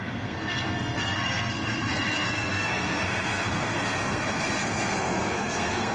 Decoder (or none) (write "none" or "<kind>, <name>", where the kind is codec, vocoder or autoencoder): codec, SNAC